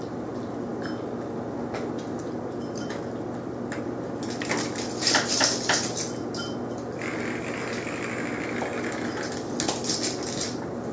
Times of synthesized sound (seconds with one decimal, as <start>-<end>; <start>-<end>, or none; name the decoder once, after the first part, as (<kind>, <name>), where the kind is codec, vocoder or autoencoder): none